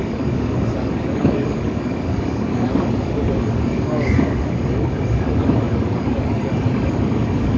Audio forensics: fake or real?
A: fake